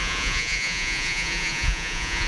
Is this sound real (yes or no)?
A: no